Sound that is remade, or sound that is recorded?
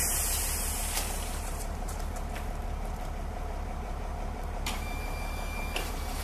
remade